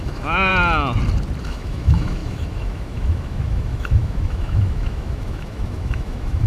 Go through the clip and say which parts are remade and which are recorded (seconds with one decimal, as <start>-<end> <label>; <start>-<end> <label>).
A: 0.0-0.5 remade; 0.5-1.4 recorded; 1.4-6.5 remade